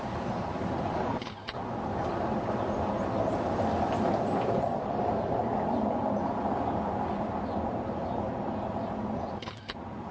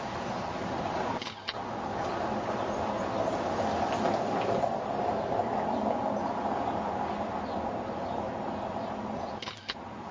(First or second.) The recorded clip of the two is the second